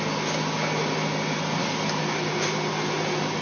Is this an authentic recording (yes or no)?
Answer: yes